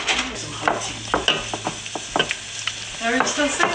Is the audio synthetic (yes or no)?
no